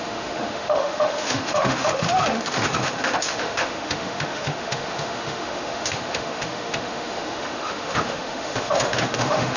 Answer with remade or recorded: remade